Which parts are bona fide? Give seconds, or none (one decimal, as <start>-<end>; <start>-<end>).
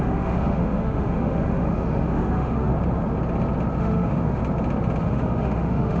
2.7-3.8; 4.4-5.0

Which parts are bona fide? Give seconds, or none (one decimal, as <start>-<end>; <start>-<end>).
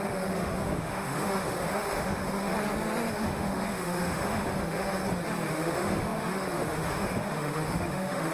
2.5-3.1; 4.9-5.5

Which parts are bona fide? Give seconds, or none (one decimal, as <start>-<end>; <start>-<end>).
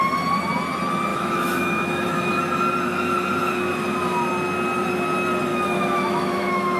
0.0-1.1; 2.4-5.5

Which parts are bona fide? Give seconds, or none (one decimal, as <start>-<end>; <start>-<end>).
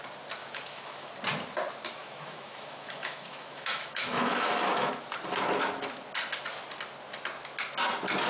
0.0-0.4; 1.1-2.0; 4.9-8.3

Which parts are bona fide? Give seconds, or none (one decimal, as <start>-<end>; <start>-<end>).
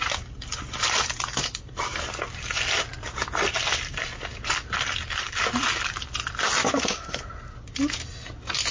0.0-6.6; 7.2-8.7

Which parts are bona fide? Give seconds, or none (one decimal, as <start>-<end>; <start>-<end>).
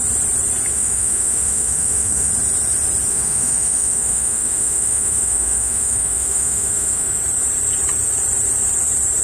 0.0-0.7; 2.3-3.1; 7.2-9.2